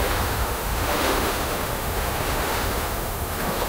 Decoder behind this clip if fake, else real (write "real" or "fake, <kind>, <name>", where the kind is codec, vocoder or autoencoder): fake, autoencoder, DAC-VAE